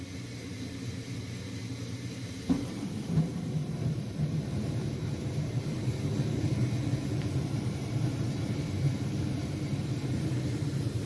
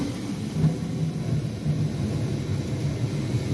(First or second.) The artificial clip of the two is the first